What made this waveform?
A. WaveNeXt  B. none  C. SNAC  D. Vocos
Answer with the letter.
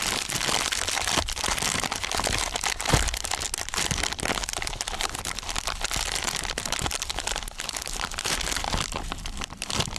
B